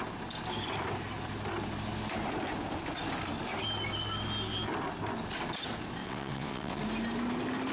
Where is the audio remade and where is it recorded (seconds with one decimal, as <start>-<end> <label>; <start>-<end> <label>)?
0.0-6.0 recorded; 6.0-6.8 remade; 6.8-7.7 recorded